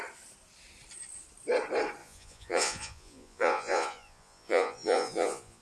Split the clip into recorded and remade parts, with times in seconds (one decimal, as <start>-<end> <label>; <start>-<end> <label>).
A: 0.0-2.0 recorded; 2.0-5.6 remade